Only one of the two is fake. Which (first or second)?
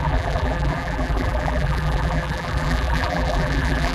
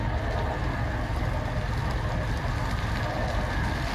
first